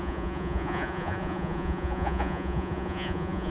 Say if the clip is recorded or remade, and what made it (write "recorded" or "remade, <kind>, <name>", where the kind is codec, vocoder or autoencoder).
remade, vocoder, Vocos